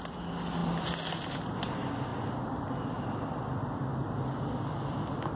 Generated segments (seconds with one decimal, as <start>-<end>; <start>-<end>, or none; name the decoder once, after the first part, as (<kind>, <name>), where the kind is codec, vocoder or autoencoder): none